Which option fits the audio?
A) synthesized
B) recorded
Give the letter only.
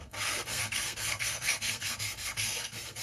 A